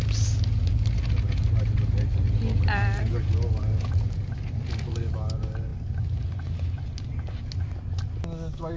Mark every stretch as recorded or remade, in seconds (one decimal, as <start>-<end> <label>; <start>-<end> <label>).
0.0-8.8 recorded

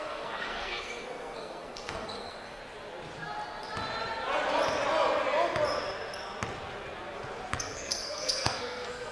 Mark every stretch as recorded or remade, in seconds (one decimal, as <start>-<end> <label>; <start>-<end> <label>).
0.0-2.6 remade; 2.6-7.6 recorded; 7.6-9.1 remade